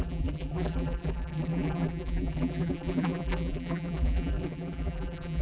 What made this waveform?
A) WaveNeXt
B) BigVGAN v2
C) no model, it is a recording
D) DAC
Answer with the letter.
B